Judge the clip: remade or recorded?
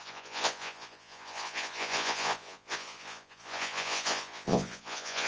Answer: remade